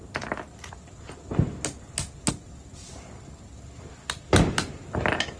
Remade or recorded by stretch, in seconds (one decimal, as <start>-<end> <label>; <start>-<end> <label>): 0.0-5.4 recorded